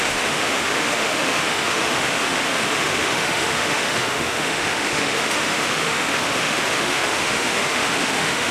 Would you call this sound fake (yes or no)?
yes